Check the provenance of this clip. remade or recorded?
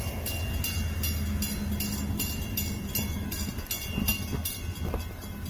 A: recorded